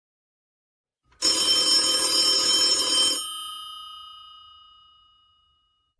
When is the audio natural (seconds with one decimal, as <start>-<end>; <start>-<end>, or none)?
0.0-6.0